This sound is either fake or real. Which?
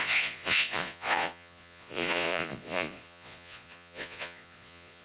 fake